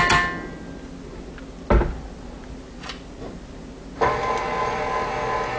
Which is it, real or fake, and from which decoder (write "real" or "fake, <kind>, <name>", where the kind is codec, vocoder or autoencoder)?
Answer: real